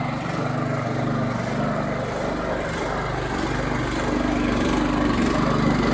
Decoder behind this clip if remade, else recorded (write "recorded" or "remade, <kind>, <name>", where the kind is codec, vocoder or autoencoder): recorded